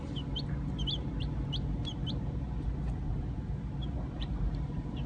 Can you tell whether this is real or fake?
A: fake